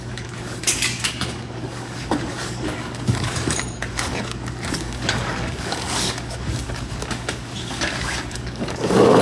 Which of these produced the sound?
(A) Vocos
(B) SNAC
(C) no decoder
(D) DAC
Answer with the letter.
D